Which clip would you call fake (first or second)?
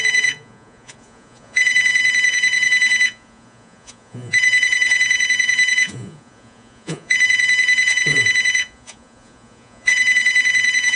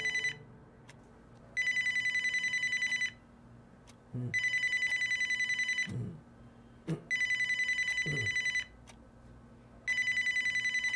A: first